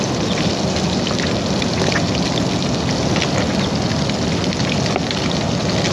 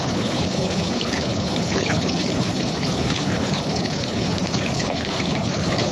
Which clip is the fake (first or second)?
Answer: second